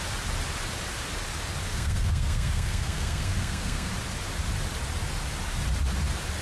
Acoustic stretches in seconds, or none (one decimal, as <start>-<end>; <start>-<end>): 0.0-1.7; 3.9-6.4